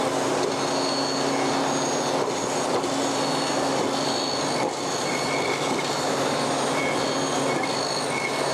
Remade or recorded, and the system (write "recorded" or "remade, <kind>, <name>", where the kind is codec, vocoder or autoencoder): recorded